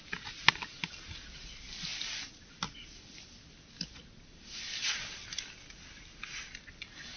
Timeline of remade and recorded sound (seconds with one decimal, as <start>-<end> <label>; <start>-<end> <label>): 0.0-7.2 recorded